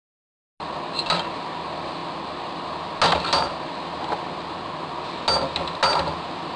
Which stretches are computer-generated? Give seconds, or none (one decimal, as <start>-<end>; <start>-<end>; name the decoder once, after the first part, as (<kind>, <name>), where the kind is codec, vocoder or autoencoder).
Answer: none